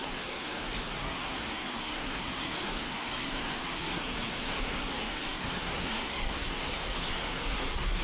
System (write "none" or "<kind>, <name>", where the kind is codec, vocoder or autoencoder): codec, SNAC